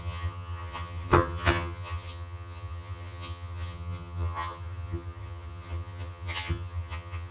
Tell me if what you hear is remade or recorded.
remade